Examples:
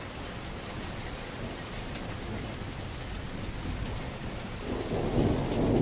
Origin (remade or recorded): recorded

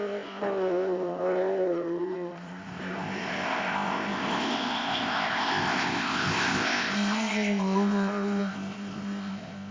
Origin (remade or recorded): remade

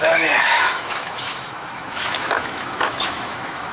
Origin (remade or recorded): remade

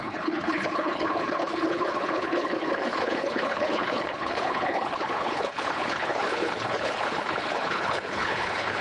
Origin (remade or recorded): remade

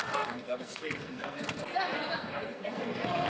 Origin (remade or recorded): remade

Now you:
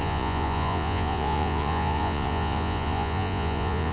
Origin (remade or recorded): remade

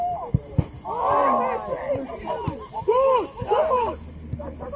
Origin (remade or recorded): recorded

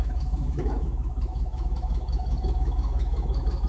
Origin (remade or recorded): remade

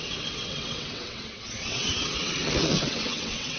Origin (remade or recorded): remade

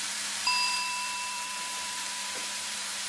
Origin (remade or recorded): remade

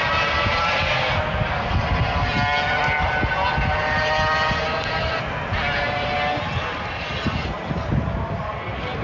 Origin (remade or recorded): recorded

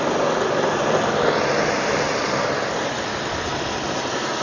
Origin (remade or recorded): recorded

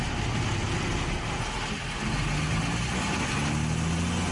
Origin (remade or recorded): recorded